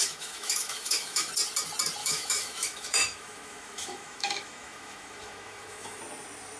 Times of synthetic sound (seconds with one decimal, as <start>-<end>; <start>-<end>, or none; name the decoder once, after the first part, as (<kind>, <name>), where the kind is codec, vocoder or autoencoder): 0.0-1.3 (autoencoder, DAC-VAE); 2.0-6.0